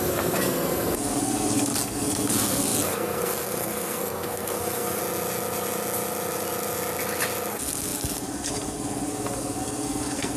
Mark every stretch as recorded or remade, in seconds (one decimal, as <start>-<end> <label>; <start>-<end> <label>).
0.0-5.0 remade; 5.0-7.5 recorded; 7.5-10.4 remade

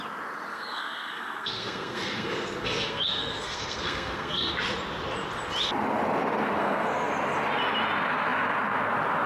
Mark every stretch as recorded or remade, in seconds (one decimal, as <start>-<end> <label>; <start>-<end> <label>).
0.0-0.5 recorded; 0.5-4.5 remade; 4.5-6.6 recorded; 6.6-7.1 remade; 7.1-9.3 recorded

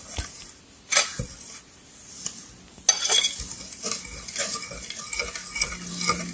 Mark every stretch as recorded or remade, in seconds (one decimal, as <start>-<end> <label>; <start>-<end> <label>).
0.0-6.3 recorded

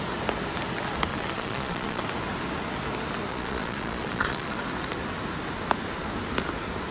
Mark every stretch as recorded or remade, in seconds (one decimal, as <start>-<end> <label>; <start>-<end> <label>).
0.0-1.1 recorded; 1.1-2.0 remade; 2.0-3.3 recorded; 3.3-4.6 remade; 4.6-6.9 recorded

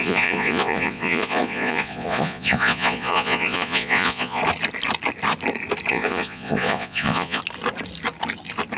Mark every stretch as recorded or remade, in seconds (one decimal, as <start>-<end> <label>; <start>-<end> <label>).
0.0-4.4 remade; 4.4-5.9 recorded; 5.9-7.4 remade; 7.4-8.8 recorded

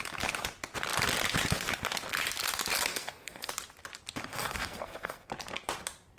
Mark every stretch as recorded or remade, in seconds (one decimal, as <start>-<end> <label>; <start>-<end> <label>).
0.0-2.9 recorded; 2.9-3.5 remade; 3.5-4.3 recorded; 4.3-5.3 remade; 5.3-6.2 recorded